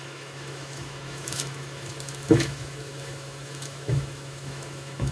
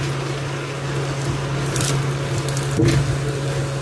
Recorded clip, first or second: second